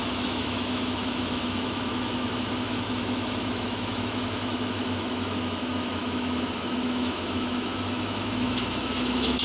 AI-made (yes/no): yes